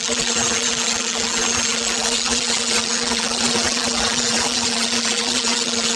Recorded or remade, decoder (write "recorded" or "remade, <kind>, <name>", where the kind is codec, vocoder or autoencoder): remade, vocoder, BigVGAN v2